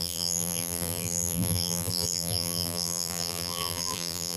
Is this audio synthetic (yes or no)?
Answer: yes